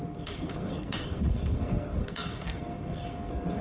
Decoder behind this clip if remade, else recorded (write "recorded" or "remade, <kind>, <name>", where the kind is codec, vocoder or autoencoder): remade, codec, SNAC